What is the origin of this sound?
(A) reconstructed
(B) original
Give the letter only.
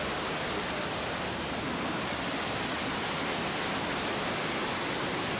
B